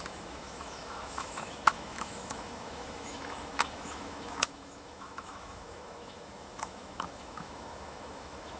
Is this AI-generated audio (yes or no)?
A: yes